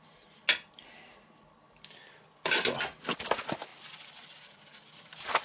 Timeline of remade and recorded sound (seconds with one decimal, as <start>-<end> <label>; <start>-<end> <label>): 0.0-5.4 recorded

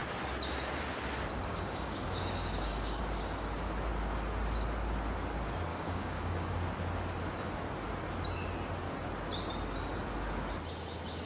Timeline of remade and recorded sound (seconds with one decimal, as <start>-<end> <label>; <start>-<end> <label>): 0.0-1.5 recorded; 1.5-3.0 remade; 3.0-5.7 recorded; 5.7-6.5 remade; 6.5-11.3 recorded

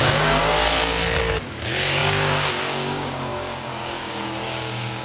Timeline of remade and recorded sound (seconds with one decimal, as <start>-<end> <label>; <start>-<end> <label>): 0.0-0.4 remade; 0.4-1.2 recorded; 1.2-5.0 remade

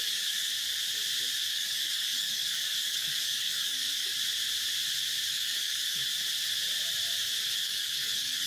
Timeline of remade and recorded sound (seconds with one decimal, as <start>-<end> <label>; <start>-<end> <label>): 0.0-0.5 remade; 0.5-1.5 recorded; 1.5-4.1 remade; 4.1-5.3 recorded; 5.3-6.0 remade; 6.0-7.5 recorded; 7.5-8.5 remade

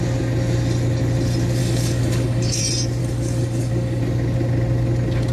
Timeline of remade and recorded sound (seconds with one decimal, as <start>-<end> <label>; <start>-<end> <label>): 0.0-1.6 recorded; 1.6-2.6 remade; 2.6-3.0 recorded; 3.0-4.0 remade; 4.0-5.3 recorded

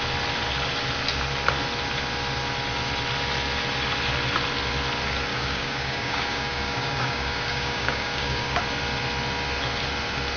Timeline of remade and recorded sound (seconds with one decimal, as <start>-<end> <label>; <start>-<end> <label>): 0.0-5.3 recorded; 5.3-8.6 remade; 8.6-10.4 recorded